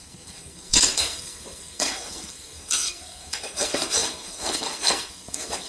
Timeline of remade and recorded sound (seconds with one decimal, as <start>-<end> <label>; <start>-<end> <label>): 0.0-5.7 remade